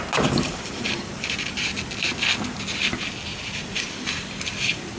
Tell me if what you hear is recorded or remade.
recorded